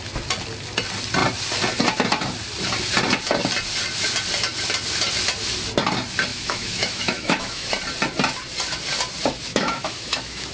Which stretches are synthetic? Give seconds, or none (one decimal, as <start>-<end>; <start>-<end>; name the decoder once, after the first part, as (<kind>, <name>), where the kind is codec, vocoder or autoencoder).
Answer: 6.3-7.7 (autoencoder, DAC-VAE); 9.5-10.5